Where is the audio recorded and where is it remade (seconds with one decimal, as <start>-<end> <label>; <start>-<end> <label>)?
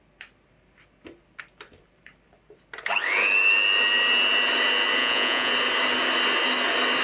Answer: 0.0-5.0 recorded; 5.0-5.5 remade; 5.5-7.0 recorded